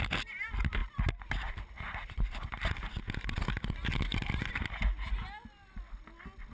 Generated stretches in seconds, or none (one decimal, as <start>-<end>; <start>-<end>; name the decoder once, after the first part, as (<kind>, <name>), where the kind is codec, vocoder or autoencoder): none